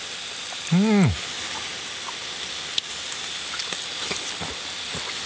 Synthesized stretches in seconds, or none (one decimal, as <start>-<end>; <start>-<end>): none